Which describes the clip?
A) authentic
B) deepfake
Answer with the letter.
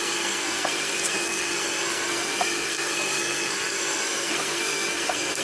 B